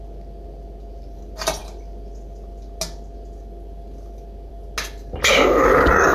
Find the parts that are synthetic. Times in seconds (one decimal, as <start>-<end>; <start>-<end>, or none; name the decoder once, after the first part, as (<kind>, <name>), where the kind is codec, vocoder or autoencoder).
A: none